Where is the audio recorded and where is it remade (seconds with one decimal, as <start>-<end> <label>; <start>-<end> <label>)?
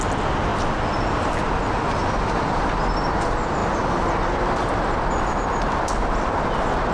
0.0-6.9 recorded